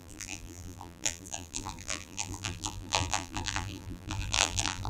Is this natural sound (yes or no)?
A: no